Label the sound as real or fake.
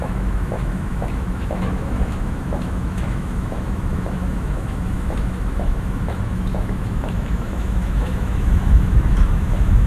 fake